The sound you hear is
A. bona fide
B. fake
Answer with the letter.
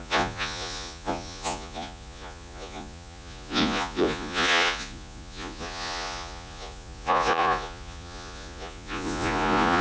B